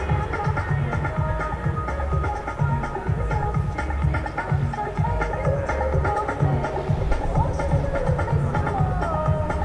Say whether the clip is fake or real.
real